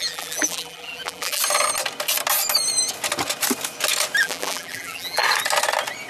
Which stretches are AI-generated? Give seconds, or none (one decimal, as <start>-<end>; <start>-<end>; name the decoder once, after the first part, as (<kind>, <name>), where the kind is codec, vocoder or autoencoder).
0.0-1.4 (vocoder, BigVGAN v2); 4.2-5.2